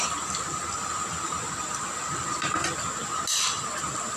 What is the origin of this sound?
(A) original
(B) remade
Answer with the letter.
A